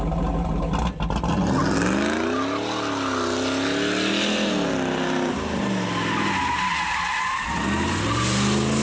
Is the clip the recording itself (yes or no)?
yes